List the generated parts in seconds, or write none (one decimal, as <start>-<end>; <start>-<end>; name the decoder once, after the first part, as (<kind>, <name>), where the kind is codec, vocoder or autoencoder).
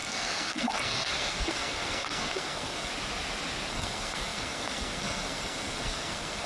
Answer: 0.0-2.9 (codec, SNAC); 3.7-6.5